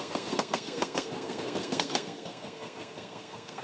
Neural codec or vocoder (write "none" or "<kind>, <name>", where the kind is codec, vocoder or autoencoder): codec, SNAC